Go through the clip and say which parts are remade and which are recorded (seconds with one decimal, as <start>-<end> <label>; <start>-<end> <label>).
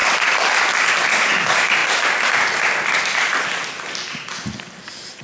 0.0-5.2 recorded